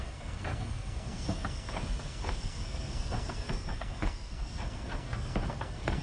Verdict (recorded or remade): remade